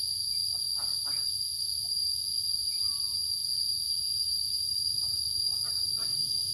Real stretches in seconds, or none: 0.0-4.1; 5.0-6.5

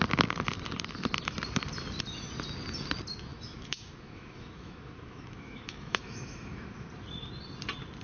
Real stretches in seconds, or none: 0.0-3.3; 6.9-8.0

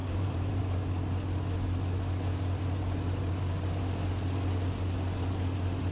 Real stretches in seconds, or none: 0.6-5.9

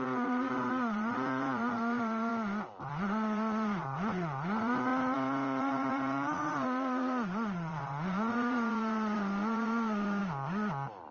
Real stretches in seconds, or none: 2.3-2.8; 10.2-11.1

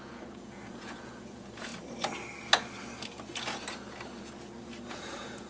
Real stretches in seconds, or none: 1.7-4.9